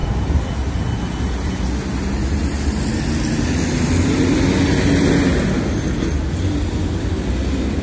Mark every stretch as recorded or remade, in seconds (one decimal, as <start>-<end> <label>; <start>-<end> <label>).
0.0-7.8 recorded